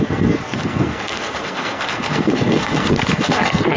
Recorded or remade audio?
remade